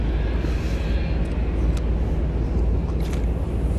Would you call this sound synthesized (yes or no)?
no